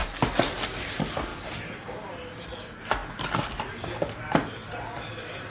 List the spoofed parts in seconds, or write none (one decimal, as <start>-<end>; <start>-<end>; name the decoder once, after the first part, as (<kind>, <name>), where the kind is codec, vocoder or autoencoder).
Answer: none